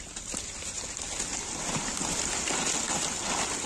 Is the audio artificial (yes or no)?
no